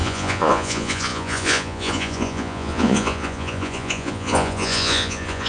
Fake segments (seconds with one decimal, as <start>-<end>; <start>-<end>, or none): 0.0-5.5